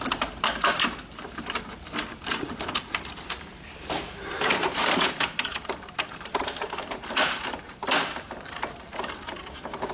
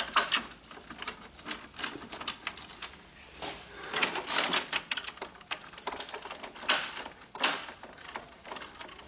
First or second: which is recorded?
second